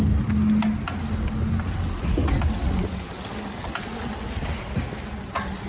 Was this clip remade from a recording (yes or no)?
no